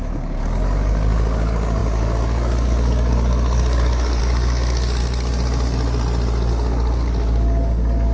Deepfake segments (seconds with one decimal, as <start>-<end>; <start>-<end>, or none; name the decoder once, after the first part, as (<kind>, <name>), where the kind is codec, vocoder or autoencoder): 0.0-5.0 (codec, DAC); 6.5-8.1